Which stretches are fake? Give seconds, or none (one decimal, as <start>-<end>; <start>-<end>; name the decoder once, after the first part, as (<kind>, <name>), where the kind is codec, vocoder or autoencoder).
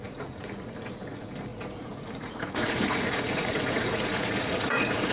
0.0-5.1 (vocoder, Vocos)